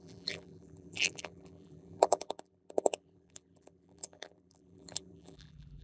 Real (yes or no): no